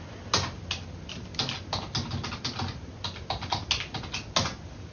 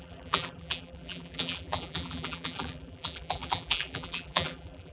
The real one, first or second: first